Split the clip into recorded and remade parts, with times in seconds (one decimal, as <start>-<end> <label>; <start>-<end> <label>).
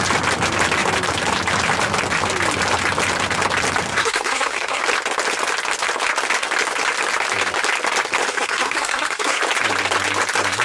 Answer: 0.0-3.9 recorded; 3.9-4.8 remade; 4.8-8.3 recorded; 8.3-9.4 remade; 9.4-10.6 recorded